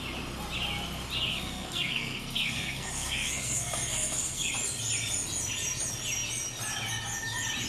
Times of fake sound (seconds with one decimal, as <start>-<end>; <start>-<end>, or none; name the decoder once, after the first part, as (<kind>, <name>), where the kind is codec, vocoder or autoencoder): 1.3-4.5 (codec, SNAC)